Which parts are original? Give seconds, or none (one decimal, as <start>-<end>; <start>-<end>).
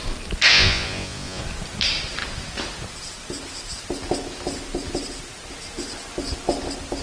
0.0-0.5; 1.4-7.0